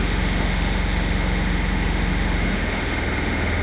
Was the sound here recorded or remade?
remade